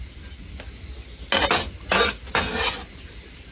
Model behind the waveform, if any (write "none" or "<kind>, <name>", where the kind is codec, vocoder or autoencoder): none